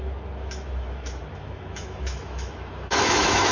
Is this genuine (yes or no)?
no